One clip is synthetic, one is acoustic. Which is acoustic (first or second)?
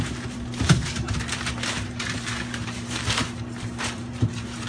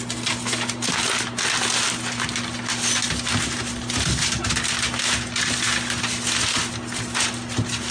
second